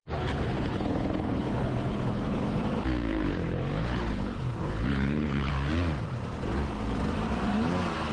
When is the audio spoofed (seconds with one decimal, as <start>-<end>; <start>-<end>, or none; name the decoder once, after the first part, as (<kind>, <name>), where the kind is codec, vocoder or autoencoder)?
0.0-2.6 (codec, HILCodec); 3.1-5.5